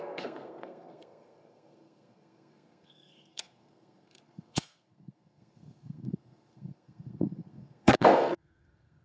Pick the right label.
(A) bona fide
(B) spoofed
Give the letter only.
B